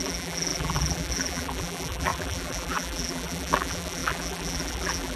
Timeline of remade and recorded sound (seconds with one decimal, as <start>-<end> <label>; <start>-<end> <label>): 0.0-5.2 remade